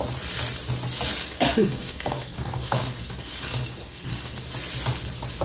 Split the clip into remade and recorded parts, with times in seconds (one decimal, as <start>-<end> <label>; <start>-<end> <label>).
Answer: 0.0-1.2 recorded; 1.2-4.4 remade; 4.4-5.4 recorded